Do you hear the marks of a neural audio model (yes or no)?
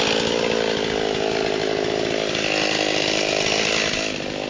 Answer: no